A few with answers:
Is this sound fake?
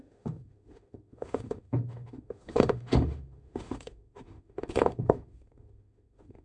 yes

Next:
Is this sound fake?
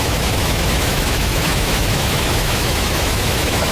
yes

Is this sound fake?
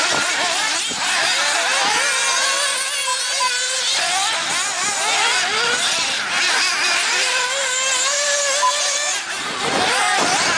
no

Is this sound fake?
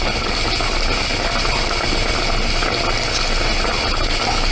no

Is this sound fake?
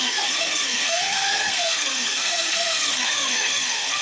yes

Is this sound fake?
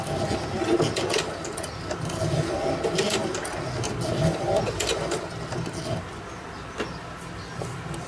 no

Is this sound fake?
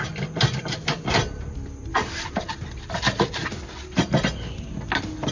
yes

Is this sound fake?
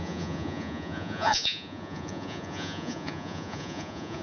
yes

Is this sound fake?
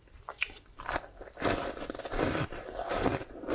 no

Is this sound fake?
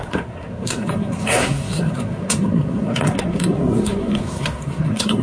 yes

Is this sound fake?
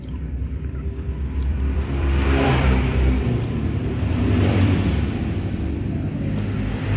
yes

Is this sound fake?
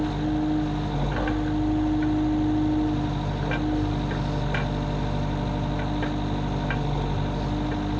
no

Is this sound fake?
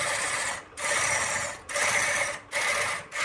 no